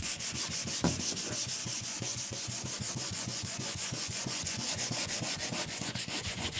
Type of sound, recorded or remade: remade